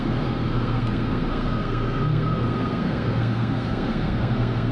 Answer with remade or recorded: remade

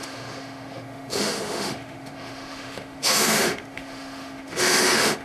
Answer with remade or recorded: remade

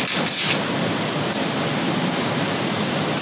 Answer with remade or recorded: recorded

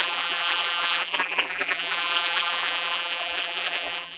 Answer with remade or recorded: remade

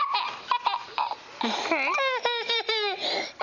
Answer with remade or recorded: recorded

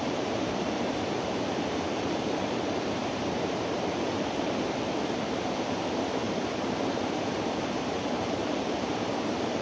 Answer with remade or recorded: remade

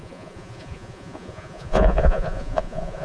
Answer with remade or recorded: remade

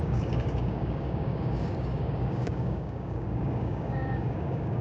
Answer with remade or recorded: remade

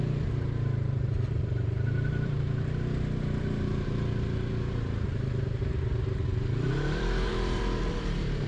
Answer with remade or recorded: remade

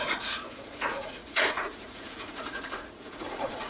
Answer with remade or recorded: remade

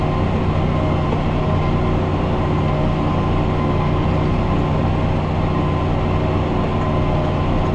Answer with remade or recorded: recorded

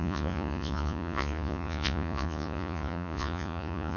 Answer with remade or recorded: remade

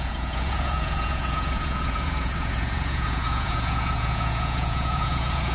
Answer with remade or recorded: remade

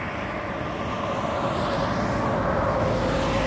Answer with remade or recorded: recorded